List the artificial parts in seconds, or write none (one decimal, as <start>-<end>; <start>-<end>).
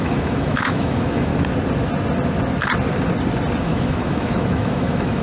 0.0-1.3; 3.6-5.2